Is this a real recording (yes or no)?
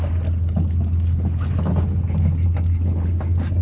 yes